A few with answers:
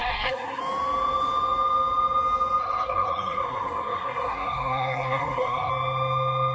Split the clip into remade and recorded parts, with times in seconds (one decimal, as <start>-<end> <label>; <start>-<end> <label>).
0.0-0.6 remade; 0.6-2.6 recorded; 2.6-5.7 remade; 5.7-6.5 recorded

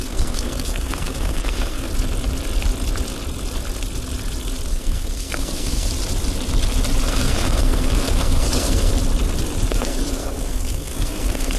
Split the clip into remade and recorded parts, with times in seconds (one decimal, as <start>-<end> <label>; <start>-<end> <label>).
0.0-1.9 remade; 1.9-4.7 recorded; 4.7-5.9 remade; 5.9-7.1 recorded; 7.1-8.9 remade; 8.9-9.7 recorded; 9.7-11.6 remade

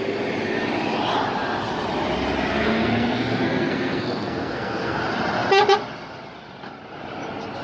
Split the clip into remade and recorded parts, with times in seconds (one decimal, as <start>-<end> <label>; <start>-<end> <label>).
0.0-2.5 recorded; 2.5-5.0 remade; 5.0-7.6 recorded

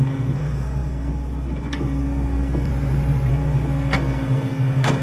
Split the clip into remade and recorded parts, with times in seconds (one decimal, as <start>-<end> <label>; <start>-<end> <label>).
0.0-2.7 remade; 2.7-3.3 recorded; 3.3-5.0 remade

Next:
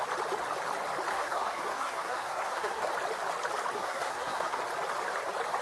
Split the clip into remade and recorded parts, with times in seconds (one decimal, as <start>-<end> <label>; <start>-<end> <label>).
0.0-1.1 recorded; 1.1-2.9 remade; 2.9-3.8 recorded; 3.8-4.6 remade; 4.6-5.6 recorded

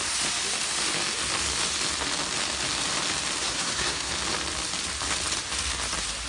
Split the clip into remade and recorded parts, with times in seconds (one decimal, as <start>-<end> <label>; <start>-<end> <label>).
0.0-3.4 recorded; 3.4-4.1 remade; 4.1-6.3 recorded

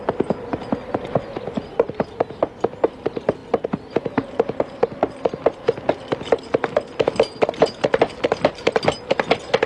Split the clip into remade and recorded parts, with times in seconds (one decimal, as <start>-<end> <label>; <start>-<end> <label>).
0.0-9.7 recorded